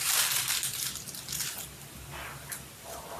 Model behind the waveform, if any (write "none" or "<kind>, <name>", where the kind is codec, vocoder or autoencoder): none